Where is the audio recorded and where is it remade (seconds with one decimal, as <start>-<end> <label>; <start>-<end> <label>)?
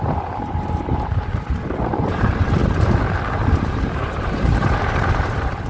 0.0-2.6 remade; 2.6-3.5 recorded; 3.5-5.7 remade